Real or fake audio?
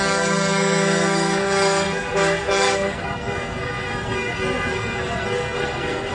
fake